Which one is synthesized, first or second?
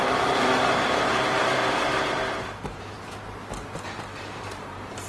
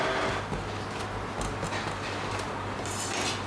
first